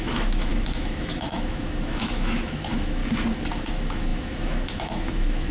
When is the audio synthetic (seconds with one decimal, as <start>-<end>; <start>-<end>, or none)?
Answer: 0.0-3.0; 3.5-5.5